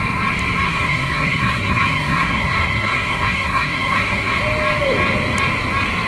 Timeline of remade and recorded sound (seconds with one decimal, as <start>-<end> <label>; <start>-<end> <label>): 0.0-0.7 recorded; 0.7-4.4 remade; 4.4-6.1 recorded